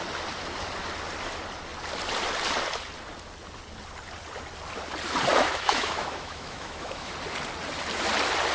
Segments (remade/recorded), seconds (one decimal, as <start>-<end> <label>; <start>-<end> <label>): 0.0-5.3 recorded; 5.3-7.1 remade; 7.1-8.5 recorded